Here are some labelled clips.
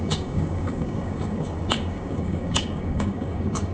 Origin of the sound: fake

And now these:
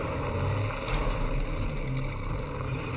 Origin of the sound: real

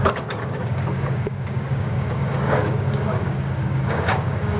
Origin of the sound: fake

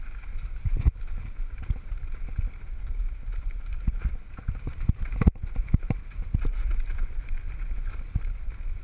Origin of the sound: real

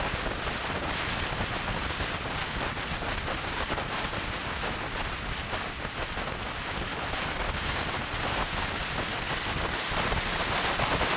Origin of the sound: real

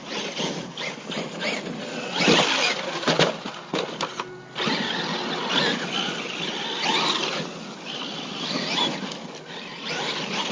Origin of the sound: real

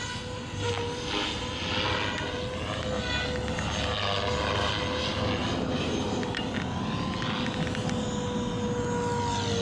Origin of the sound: real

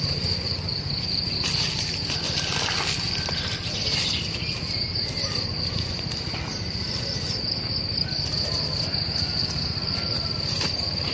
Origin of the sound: real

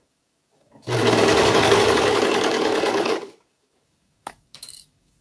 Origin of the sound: fake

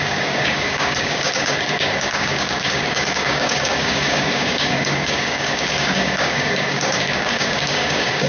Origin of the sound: fake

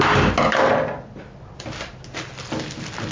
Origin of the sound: real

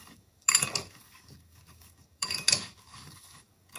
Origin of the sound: fake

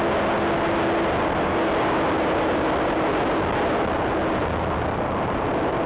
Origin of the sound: real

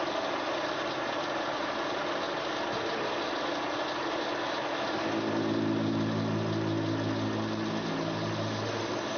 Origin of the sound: real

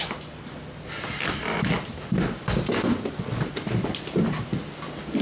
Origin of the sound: real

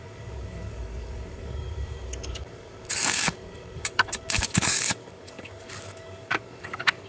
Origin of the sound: fake